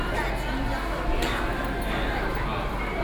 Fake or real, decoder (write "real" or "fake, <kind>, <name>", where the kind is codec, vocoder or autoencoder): real